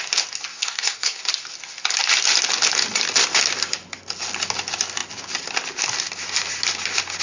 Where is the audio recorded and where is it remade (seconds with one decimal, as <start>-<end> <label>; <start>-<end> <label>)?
0.0-0.5 recorded; 0.5-1.2 remade; 1.2-7.2 recorded